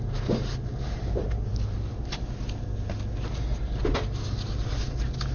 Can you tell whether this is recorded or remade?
recorded